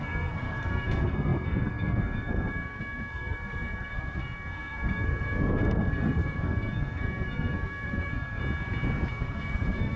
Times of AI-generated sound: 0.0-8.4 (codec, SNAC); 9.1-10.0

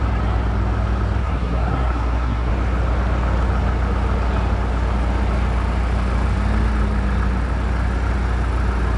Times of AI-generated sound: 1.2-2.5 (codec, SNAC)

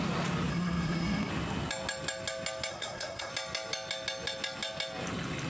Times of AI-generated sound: 0.5-1.3 (codec, SNAC); 2.7-3.3

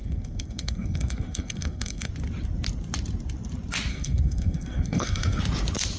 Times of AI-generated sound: 0.0-2.1 (codec, SNAC); 3.9-5.4

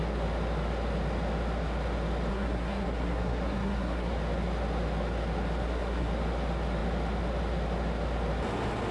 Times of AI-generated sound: 2.3-4.1 (codec, SNAC); 5.6-6.1

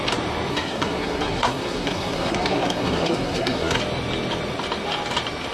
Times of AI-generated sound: 0.5-3.8 (codec, SNAC)